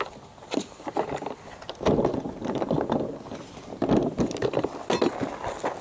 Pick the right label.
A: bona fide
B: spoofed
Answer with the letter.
A